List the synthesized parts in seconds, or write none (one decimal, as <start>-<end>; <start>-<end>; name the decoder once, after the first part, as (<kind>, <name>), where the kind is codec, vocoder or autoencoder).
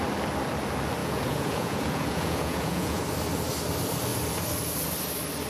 1.0-3.0 (vocoder, Vocos)